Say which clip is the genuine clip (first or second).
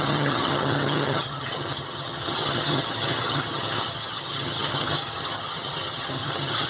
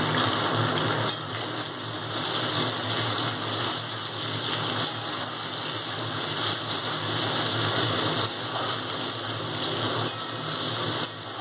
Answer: second